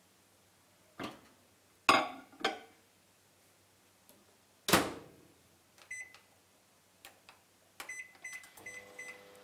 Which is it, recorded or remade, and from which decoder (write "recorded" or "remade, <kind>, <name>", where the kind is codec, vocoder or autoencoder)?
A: recorded